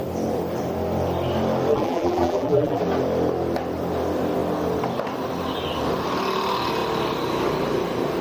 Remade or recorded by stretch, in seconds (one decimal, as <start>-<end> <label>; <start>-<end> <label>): 0.0-1.7 recorded; 1.7-2.8 remade; 2.8-8.2 recorded